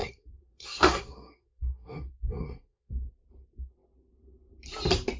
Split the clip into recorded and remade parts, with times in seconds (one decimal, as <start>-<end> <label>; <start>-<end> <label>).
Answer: 0.0-3.1 remade; 3.1-5.2 recorded